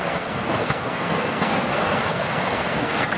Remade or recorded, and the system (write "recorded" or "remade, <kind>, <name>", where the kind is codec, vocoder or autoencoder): remade, codec, SNAC